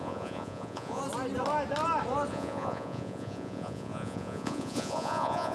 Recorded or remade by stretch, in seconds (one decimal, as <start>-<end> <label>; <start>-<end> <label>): 0.0-1.0 remade; 1.0-2.3 recorded; 2.3-5.5 remade

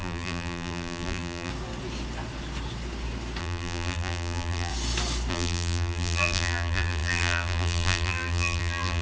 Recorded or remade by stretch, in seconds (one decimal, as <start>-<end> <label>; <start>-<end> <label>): 0.0-1.5 remade; 1.5-3.4 recorded; 3.4-4.7 remade; 4.7-5.3 recorded; 5.3-9.0 remade

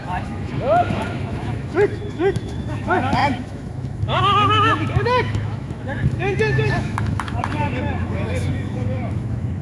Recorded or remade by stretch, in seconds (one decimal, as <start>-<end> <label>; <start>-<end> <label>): 0.0-9.6 remade